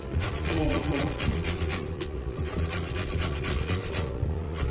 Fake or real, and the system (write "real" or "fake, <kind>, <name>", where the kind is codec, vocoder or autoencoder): fake, vocoder, Vocos